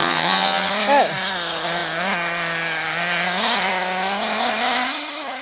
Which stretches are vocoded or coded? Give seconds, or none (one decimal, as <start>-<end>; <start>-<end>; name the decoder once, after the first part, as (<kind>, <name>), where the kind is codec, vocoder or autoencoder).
0.0-0.7 (vocoder, HiFi-GAN)